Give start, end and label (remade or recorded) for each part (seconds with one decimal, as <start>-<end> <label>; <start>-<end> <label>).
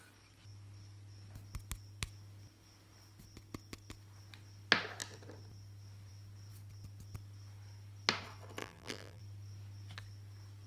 0.0-8.6 recorded; 8.6-9.2 remade; 9.2-10.7 recorded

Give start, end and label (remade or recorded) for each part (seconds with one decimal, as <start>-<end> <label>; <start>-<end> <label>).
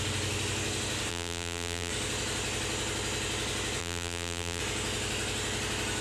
0.0-1.1 recorded; 1.1-1.9 remade; 1.9-3.8 recorded; 3.8-4.6 remade; 4.6-6.0 recorded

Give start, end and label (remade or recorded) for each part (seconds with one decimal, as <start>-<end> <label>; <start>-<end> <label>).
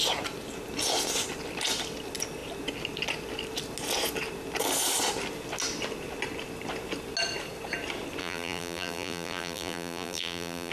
0.0-8.2 recorded; 8.2-10.7 remade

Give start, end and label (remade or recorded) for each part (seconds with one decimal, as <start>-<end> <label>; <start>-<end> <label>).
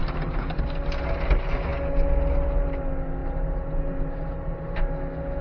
0.0-0.6 remade; 0.6-3.2 recorded; 3.2-4.8 remade; 4.8-5.4 recorded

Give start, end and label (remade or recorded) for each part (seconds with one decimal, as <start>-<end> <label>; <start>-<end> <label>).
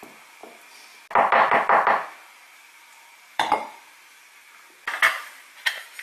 0.0-2.4 recorded; 2.4-3.8 remade; 3.8-6.0 recorded